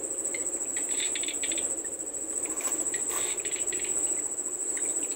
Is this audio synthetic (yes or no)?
no